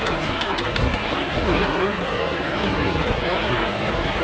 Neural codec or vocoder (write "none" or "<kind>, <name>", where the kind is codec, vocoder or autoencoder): codec, SNAC